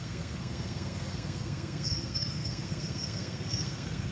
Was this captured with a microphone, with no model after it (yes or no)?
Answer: no